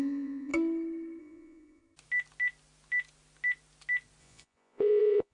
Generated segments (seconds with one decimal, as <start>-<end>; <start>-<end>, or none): 0.0-0.5; 1.2-1.8; 4.2-5.3